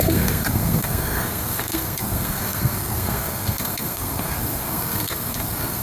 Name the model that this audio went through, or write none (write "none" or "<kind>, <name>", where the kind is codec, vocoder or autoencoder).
codec, SNAC